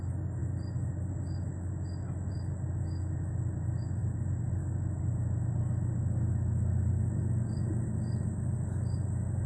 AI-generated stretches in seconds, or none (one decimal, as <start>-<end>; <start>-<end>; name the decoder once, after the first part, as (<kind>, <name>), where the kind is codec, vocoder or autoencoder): none